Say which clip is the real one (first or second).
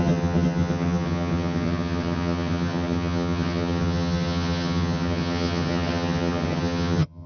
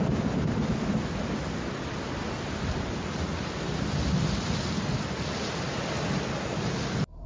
second